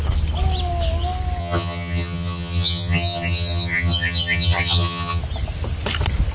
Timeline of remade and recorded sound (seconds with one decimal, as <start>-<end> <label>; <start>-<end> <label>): 0.0-1.4 recorded; 1.4-5.2 remade; 5.2-6.3 recorded